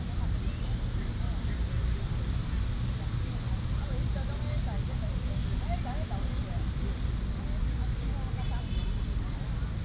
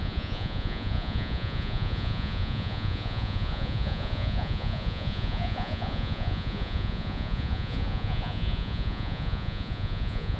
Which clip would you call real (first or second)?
first